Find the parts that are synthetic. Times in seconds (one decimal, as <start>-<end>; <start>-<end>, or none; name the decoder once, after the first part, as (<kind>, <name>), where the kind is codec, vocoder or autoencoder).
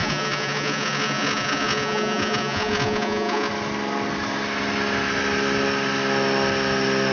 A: 0.0-3.5 (vocoder, Vocos)